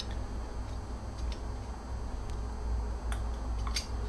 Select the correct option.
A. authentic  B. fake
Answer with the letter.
A